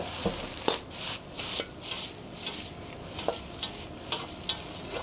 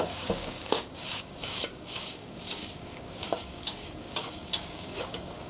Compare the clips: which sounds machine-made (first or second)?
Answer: second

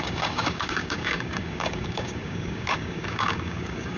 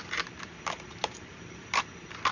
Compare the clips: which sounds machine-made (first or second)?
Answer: first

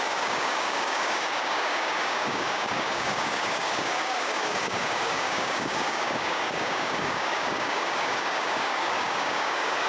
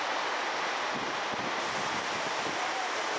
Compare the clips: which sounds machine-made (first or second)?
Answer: first